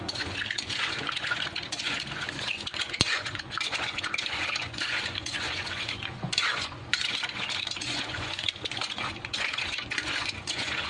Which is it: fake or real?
fake